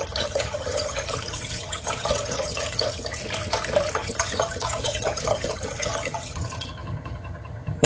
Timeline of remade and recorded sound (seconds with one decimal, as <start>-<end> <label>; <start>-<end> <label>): 0.0-3.2 remade; 3.2-3.9 recorded; 3.9-7.9 remade